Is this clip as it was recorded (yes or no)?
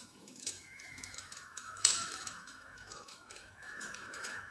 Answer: no